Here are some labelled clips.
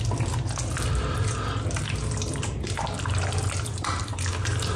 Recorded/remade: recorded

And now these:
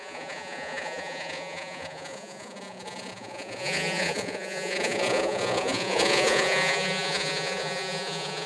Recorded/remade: remade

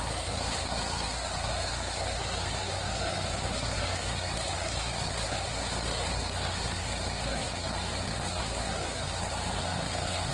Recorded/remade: remade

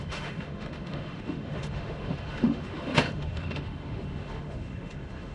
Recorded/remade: remade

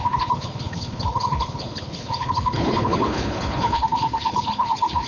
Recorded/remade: remade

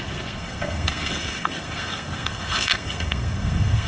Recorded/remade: remade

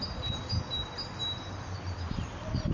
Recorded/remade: recorded